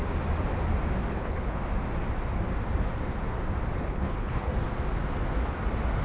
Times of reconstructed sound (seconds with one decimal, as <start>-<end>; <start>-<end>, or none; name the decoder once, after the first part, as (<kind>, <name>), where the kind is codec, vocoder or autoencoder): 1.1-1.6 (codec, HILCodec); 3.8-4.5